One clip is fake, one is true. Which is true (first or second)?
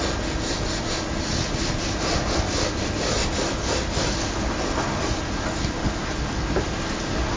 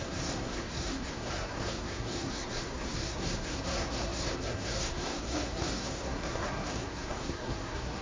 first